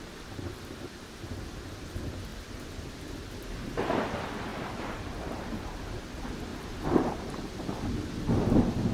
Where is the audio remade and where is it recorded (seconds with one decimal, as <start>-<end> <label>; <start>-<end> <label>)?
0.0-4.5 recorded; 4.5-5.8 remade; 5.8-6.5 recorded; 6.5-7.8 remade; 7.8-8.9 recorded